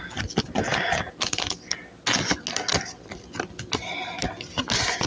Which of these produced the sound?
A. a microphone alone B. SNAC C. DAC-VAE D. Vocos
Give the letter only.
A